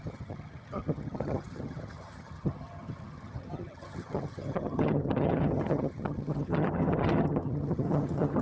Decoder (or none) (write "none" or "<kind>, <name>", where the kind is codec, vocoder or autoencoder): vocoder, HiFi-GAN